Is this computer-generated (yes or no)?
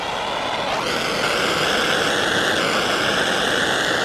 no